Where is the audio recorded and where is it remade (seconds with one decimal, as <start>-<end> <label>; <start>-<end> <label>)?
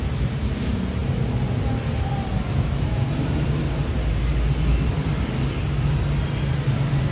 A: 0.0-7.1 recorded